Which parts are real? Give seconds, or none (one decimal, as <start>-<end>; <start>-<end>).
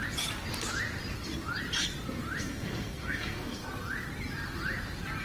0.0-2.4; 3.6-5.2